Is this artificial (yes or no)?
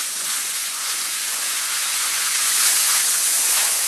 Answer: yes